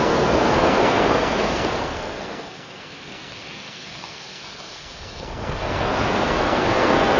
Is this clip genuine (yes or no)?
no